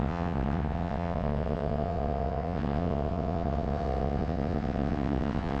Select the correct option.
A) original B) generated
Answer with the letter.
B